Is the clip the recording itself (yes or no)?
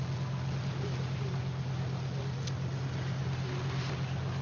yes